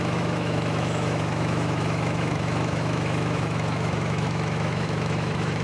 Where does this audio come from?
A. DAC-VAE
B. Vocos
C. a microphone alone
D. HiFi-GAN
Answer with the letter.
A